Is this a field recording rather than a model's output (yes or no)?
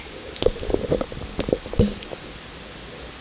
yes